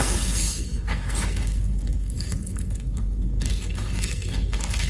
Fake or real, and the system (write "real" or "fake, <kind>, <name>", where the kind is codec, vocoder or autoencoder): fake, codec, SNAC